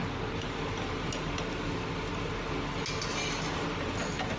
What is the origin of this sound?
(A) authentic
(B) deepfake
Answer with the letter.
A